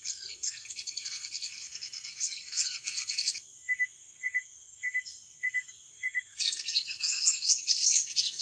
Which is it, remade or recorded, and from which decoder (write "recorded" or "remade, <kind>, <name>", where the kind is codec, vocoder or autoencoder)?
remade, codec, SNAC